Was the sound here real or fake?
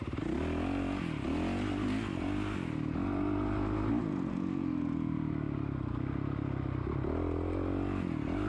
real